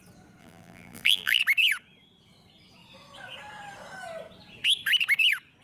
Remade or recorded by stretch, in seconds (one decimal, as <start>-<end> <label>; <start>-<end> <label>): 0.0-0.4 recorded; 0.4-1.4 remade; 1.4-5.6 recorded